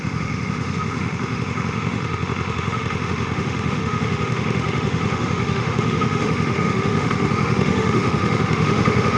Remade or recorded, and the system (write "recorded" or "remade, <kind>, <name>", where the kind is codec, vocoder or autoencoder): remade, autoencoder, DAC-VAE